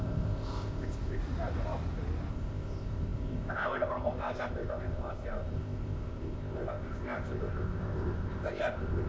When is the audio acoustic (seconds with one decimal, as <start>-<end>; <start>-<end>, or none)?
1.2-2.3